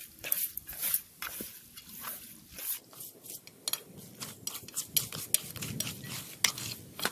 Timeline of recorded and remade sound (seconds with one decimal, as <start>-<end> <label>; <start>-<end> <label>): 0.0-7.1 recorded

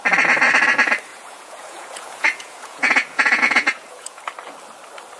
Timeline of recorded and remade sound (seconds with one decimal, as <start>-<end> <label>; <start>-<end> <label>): 0.0-1.1 recorded; 1.1-4.2 remade; 4.2-5.2 recorded

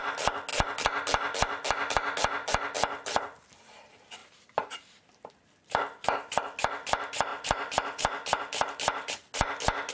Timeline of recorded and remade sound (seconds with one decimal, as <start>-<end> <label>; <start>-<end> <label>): 0.0-4.2 recorded; 4.2-5.3 remade; 5.3-7.3 recorded; 7.3-9.1 remade; 9.1-9.9 recorded

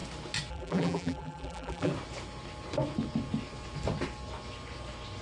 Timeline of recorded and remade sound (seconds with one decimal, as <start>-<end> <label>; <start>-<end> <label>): 0.0-0.5 recorded; 0.5-1.9 remade; 1.9-5.2 recorded

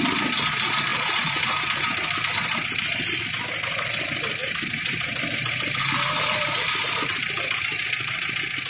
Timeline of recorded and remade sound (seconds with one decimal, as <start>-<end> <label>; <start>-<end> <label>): 0.0-0.9 recorded; 0.9-3.2 remade; 3.2-4.4 recorded; 4.4-6.3 remade; 6.3-8.7 recorded

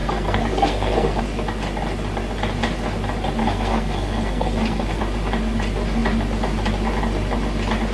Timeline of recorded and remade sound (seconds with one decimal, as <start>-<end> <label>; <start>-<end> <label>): 0.0-1.2 remade; 1.2-3.4 recorded; 3.4-5.0 remade; 5.0-7.9 recorded

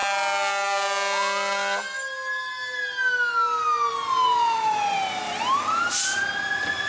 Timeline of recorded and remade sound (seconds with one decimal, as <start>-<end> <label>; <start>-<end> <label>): 0.0-6.9 recorded